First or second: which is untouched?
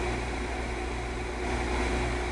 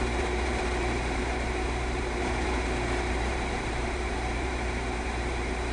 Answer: first